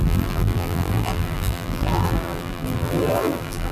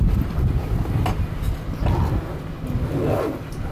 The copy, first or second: first